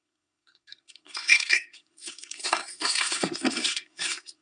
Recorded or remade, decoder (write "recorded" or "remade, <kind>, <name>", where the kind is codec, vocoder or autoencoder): remade, codec, SNAC